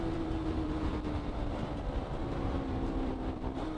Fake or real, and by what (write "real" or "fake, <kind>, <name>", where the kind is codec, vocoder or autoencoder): fake, vocoder, BigVGAN v2